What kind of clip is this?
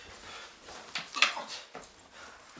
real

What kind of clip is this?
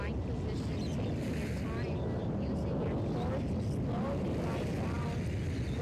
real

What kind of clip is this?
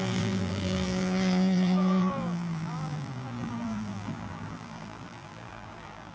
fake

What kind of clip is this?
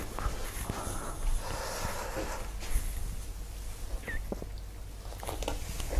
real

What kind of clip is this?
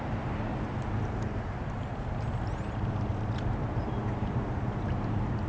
fake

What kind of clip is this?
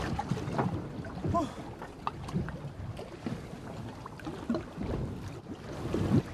real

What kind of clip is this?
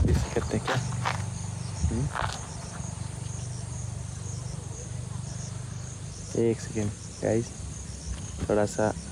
real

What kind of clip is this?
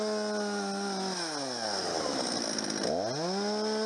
real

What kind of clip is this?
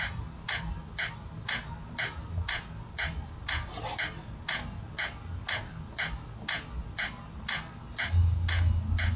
real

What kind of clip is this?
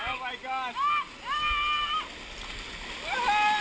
real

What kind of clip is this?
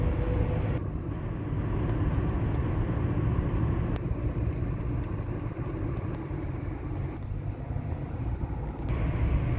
real